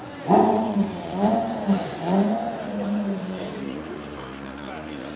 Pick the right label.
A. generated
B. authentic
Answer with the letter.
A